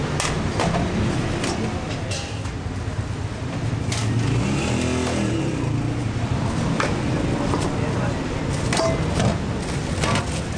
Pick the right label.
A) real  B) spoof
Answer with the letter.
A